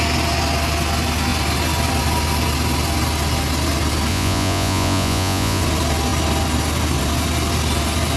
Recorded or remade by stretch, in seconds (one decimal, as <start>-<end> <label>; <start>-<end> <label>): 0.0-4.1 recorded; 4.1-5.6 remade; 5.6-8.2 recorded